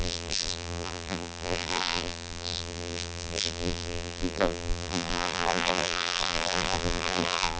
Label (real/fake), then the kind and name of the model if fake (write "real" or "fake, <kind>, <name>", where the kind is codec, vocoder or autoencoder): fake, vocoder, BigVGAN v2